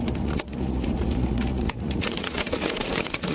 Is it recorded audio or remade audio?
remade